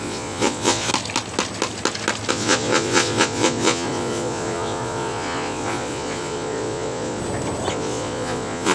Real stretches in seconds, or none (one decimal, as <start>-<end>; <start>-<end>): 0.9-2.3; 7.2-7.7